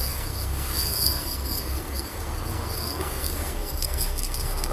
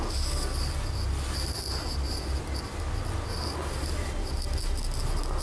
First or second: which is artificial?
first